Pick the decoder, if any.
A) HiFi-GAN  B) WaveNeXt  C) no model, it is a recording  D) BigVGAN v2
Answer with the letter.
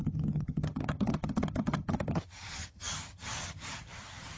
A